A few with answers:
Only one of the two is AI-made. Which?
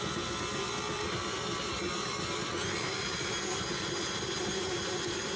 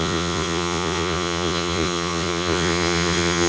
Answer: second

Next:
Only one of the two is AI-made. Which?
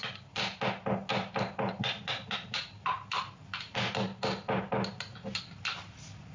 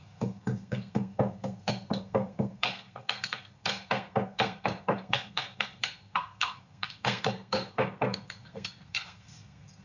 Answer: second